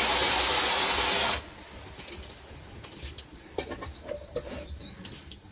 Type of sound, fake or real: real